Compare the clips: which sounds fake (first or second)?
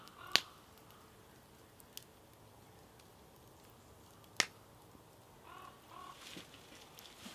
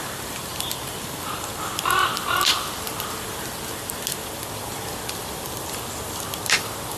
second